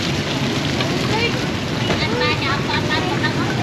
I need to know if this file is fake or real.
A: real